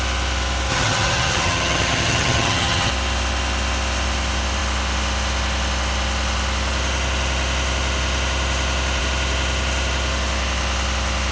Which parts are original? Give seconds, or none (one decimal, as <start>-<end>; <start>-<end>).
0.0-0.7; 2.9-11.3